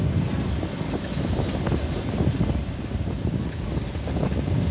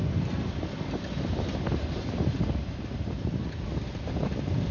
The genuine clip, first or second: first